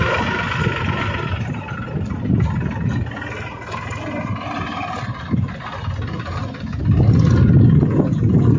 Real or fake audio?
real